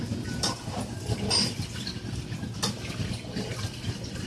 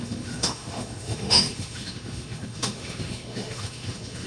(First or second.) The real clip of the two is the first